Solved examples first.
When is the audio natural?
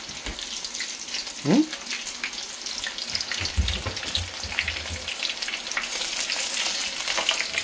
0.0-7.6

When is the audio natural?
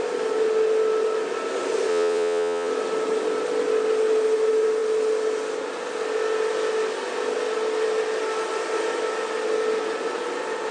0.0-1.9; 2.7-10.7